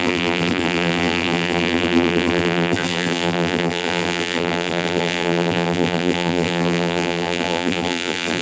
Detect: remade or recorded remade